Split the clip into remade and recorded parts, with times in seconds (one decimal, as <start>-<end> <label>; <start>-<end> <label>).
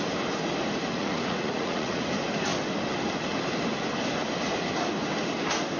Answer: 0.0-0.9 recorded; 0.9-2.0 remade; 2.0-5.8 recorded